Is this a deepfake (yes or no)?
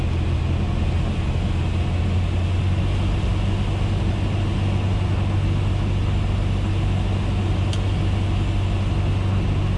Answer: no